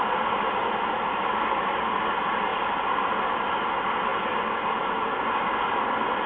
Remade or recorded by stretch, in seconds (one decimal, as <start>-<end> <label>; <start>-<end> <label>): 0.0-6.3 recorded